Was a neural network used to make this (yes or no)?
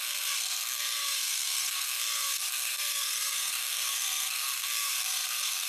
yes